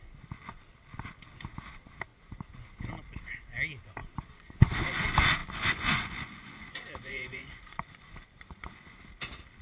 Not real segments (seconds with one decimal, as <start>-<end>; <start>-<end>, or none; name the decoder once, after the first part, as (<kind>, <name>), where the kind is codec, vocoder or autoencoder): 2.1-2.9 (vocoder, Vocos); 4.0-5.0; 5.4-9.0